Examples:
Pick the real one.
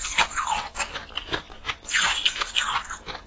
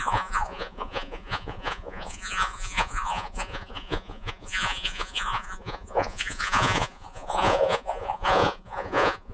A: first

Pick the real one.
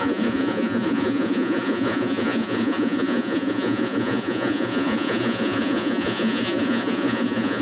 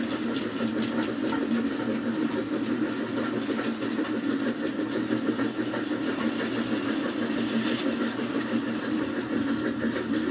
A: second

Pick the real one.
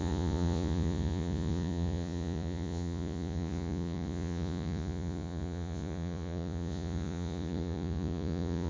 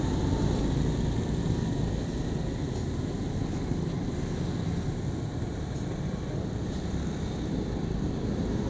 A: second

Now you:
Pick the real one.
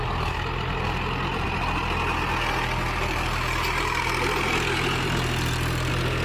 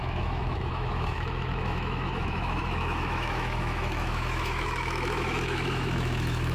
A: first